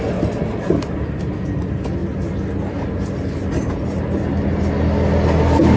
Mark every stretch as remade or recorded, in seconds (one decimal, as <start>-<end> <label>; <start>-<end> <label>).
0.0-5.8 recorded